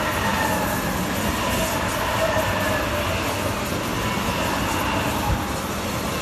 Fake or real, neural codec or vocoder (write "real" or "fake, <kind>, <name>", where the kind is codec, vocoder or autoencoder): real